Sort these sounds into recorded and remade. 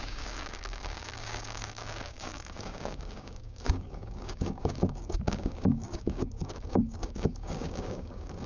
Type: remade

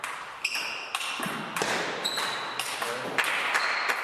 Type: recorded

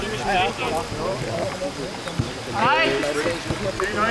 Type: recorded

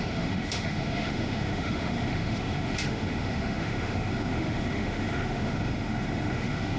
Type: remade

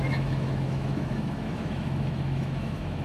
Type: remade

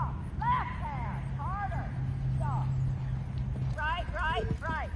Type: recorded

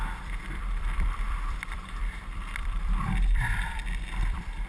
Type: remade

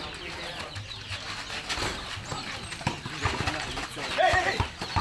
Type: recorded